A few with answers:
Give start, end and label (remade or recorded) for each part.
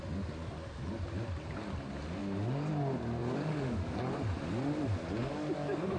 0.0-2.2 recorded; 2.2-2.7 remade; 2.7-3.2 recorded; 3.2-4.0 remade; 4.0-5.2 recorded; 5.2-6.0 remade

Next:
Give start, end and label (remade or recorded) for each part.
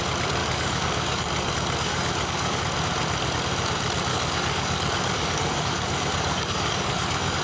0.0-0.4 recorded; 0.4-2.6 remade; 2.6-4.1 recorded; 4.1-7.4 remade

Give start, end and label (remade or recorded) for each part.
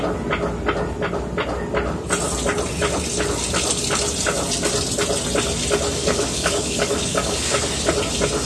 0.0-6.0 recorded; 6.0-7.6 remade; 7.6-8.5 recorded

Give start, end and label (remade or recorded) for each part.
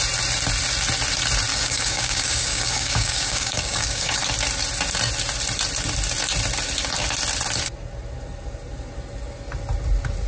0.0-1.5 recorded; 1.5-4.2 remade; 4.2-10.3 recorded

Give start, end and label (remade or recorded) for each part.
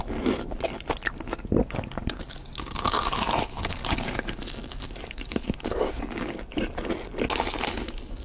0.0-1.6 recorded; 1.6-6.5 remade; 6.5-8.2 recorded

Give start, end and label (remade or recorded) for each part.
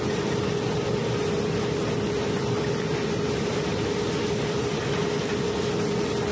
0.0-6.3 recorded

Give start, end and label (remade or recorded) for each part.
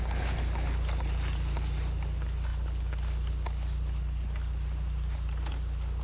0.0-6.0 recorded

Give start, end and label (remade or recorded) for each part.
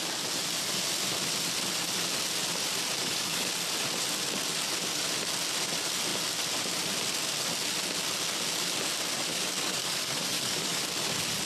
0.0-3.0 recorded; 3.0-3.5 remade; 3.5-9.3 recorded; 9.3-10.8 remade; 10.8-11.5 recorded